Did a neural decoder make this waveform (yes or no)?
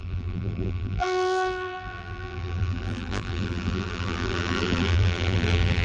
yes